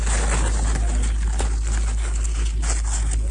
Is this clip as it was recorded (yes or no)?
yes